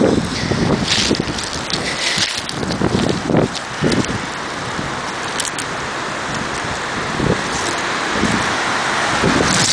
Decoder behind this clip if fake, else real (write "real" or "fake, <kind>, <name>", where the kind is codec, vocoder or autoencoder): real